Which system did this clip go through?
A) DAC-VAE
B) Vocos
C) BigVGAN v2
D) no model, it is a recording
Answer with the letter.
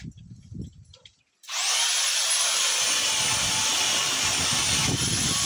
D